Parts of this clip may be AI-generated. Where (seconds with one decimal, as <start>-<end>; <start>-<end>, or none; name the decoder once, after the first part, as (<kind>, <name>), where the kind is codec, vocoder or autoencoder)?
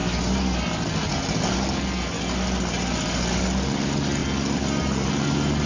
none